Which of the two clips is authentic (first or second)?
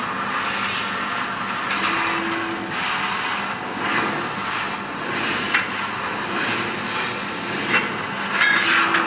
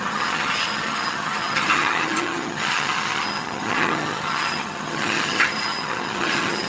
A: first